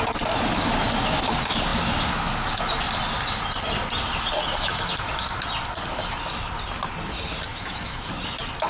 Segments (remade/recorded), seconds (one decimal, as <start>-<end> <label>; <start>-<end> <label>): 0.0-4.4 recorded; 4.4-4.9 remade; 4.9-7.5 recorded; 7.5-8.1 remade; 8.1-8.7 recorded